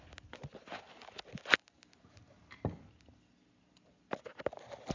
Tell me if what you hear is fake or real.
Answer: real